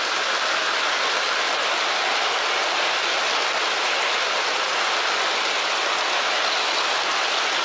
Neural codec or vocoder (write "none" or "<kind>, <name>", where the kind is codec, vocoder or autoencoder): none